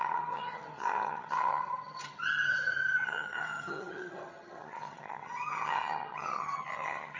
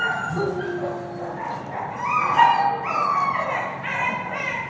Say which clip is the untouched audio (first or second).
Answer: second